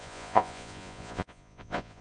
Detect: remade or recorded remade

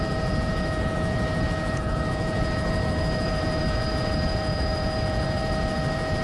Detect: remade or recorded remade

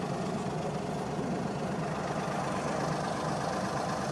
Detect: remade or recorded recorded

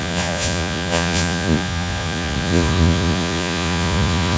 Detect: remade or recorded remade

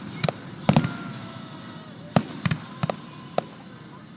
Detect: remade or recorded recorded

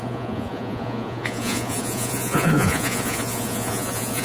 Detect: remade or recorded remade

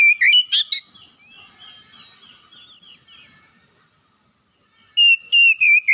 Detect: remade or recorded recorded